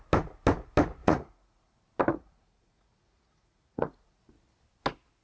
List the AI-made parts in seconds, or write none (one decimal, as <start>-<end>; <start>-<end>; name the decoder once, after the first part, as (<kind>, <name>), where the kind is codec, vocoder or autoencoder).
1.0-1.7 (vocoder, Vocos); 2.1-4.2

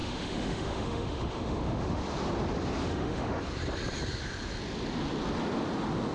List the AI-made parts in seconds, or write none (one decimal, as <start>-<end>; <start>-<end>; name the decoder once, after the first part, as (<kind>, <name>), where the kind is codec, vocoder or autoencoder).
0.0-2.0 (autoencoder, DAC-VAE); 2.9-3.4

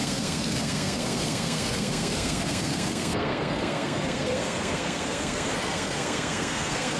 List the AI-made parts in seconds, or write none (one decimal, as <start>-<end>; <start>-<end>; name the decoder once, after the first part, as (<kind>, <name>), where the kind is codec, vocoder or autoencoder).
0.0-7.0 (codec, SNAC)